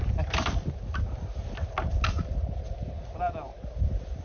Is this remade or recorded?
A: recorded